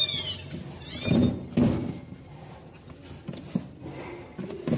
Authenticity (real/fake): real